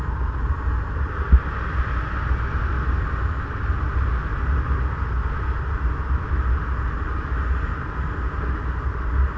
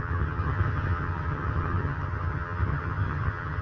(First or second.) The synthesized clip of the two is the second